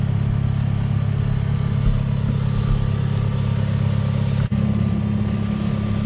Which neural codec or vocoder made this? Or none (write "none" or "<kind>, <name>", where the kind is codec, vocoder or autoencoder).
none